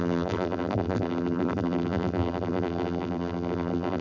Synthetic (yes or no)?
yes